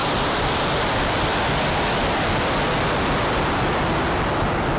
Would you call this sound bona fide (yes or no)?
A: yes